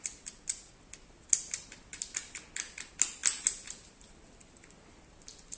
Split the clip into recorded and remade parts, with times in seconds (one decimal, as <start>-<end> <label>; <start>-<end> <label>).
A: 0.0-5.6 recorded